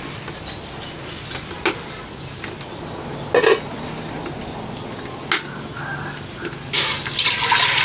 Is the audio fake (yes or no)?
no